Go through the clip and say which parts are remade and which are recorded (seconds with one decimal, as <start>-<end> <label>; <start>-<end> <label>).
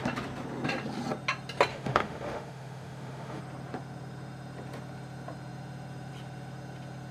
0.0-1.7 recorded; 1.7-3.4 remade; 3.4-7.1 recorded